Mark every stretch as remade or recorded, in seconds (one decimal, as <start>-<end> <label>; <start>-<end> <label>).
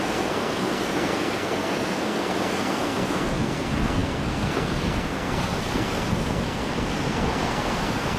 0.0-8.2 remade